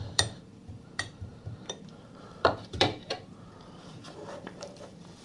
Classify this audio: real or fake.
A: fake